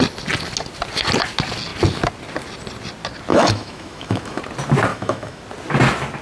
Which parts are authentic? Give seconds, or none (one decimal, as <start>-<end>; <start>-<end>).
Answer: 0.0-3.3; 4.4-4.9; 5.4-6.2